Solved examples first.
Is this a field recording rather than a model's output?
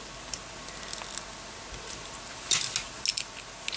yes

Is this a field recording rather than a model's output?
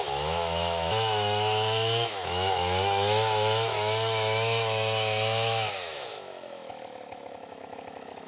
no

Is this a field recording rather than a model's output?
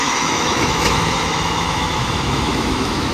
no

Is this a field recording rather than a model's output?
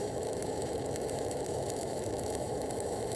no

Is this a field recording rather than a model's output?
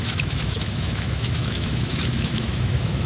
no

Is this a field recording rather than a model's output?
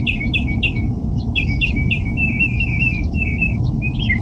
no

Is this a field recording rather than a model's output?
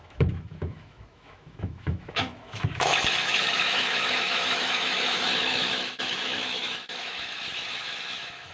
no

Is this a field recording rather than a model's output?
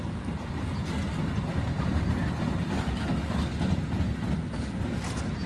yes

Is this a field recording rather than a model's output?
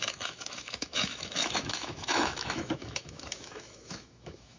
no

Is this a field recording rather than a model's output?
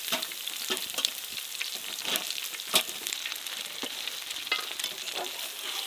yes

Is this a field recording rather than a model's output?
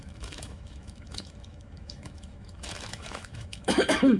no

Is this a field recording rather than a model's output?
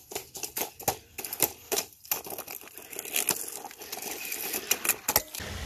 yes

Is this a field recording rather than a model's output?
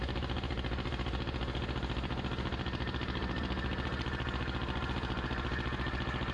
yes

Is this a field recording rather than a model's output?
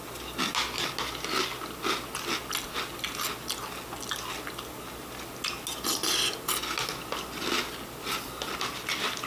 yes